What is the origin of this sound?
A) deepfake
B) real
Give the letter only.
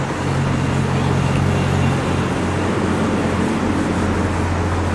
B